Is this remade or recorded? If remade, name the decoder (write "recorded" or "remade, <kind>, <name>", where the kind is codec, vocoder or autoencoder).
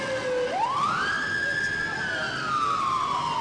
recorded